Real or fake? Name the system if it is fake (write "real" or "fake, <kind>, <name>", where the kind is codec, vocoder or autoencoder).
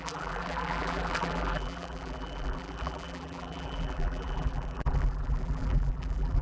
fake, vocoder, BigVGAN v2